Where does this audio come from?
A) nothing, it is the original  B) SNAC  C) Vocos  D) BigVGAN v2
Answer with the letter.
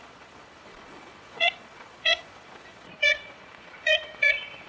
C